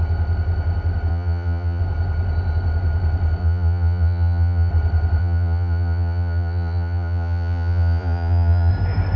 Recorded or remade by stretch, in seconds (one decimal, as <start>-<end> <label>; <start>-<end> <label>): 0.0-1.1 recorded; 1.1-1.8 remade; 1.8-3.4 recorded; 3.4-4.7 remade; 4.7-5.2 recorded; 5.2-8.7 remade; 8.7-9.2 recorded